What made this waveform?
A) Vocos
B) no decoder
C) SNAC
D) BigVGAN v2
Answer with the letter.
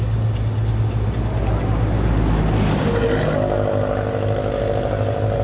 B